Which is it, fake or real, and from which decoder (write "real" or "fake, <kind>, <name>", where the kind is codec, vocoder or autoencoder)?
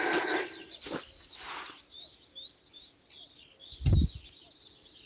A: real